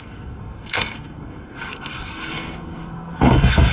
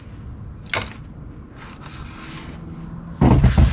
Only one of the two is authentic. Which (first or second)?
second